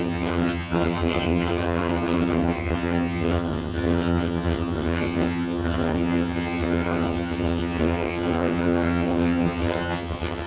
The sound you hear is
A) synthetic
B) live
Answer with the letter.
A